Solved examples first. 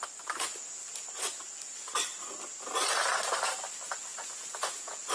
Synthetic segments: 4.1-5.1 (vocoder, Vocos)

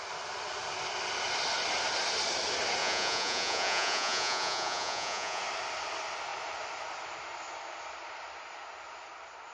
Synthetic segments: 2.8-5.4 (vocoder, Vocos)

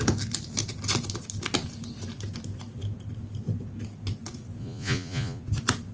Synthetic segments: 4.6-5.4 (vocoder, Vocos)

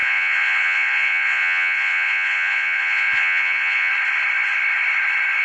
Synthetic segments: 0.0-3.9 (vocoder, Vocos)

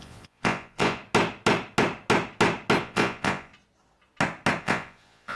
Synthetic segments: 0.0-1.0 (vocoder, Vocos); 2.8-3.5; 4.6-5.4

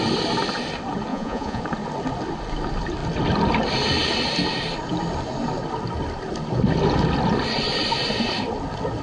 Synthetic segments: 1.1-1.6 (vocoder, Vocos)

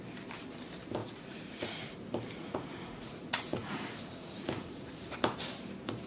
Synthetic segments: 1.0-2.0 (vocoder, Vocos); 2.4-4.9

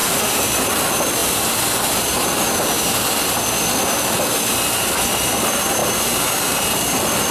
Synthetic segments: none